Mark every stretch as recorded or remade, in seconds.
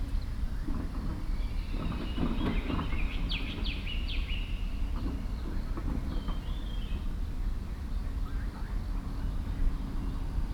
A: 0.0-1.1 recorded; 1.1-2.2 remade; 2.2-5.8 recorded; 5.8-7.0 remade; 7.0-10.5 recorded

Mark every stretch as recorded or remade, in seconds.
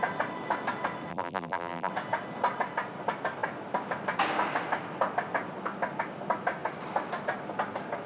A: 0.0-1.1 recorded; 1.1-1.9 remade; 1.9-8.1 recorded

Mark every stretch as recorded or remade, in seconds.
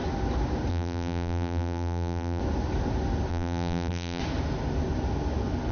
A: 0.0-0.7 recorded; 0.7-2.4 remade; 2.4-3.3 recorded; 3.3-4.2 remade; 4.2-5.7 recorded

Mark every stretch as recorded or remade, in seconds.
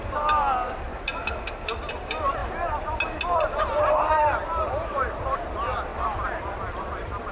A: 0.0-0.9 remade; 0.9-1.9 recorded; 1.9-2.4 remade; 2.4-3.6 recorded; 3.6-5.9 remade; 5.9-6.8 recorded; 6.8-7.3 remade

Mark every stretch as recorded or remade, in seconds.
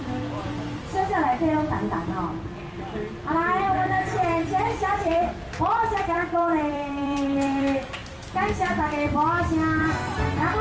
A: 0.0-0.4 remade; 0.4-3.6 recorded; 3.6-8.0 remade; 8.0-9.8 recorded; 9.8-10.6 remade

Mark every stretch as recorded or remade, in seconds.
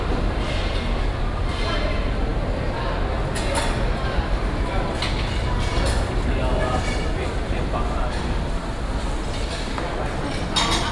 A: 0.0-5.7 recorded; 5.7-8.2 remade; 8.2-10.9 recorded